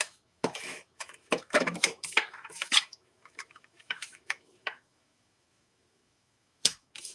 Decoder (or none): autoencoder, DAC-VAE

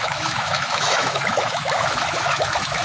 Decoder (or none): autoencoder, DAC-VAE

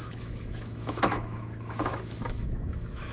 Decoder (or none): autoencoder, DAC-VAE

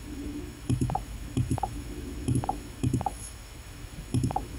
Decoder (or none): autoencoder, DAC-VAE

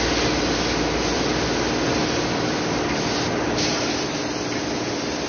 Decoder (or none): none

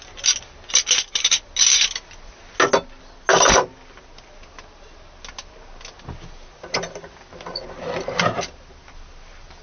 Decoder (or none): none